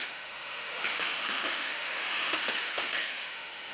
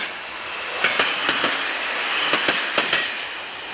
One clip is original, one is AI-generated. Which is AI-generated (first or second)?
first